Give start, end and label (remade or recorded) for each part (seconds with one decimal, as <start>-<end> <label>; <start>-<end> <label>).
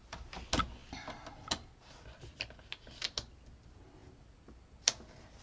0.0-5.4 recorded